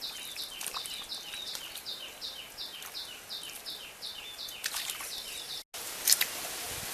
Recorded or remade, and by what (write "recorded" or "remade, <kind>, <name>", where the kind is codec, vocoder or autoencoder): recorded